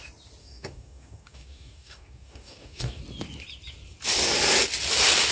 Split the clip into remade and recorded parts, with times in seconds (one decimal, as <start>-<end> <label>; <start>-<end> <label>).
0.0-0.4 recorded; 0.4-3.0 remade; 3.0-5.3 recorded